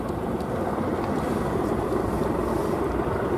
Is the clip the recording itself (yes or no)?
yes